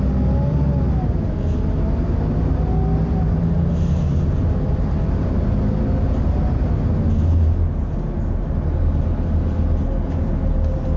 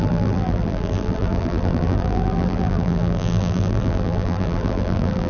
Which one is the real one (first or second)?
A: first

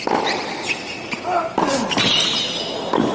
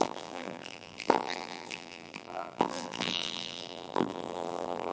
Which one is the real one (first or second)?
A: first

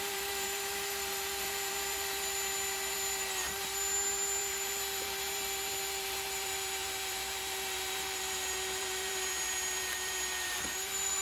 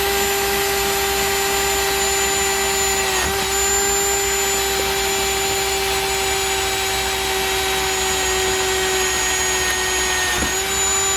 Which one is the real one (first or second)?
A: second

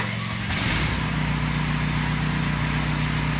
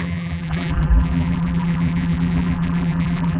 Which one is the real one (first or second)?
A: first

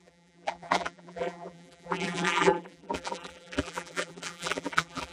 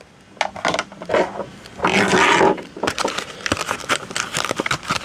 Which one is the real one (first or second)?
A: second